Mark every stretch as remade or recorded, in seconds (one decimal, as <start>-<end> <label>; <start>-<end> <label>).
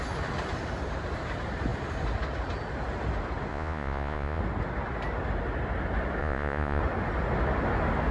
0.0-3.5 recorded; 3.5-4.4 remade; 4.4-6.2 recorded; 6.2-6.8 remade; 6.8-8.1 recorded